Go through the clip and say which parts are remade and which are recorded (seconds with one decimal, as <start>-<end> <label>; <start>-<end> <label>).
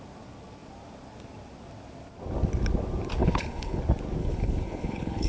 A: 0.0-3.2 recorded; 3.2-3.8 remade; 3.8-4.2 recorded; 4.2-5.3 remade